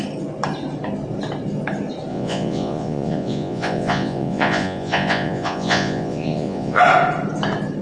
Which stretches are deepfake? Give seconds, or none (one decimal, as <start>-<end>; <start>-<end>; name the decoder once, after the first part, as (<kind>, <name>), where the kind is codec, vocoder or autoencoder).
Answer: 2.1-6.8 (vocoder, Vocos)